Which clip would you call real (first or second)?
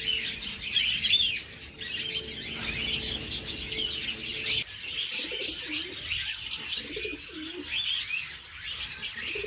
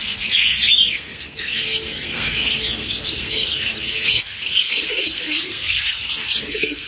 first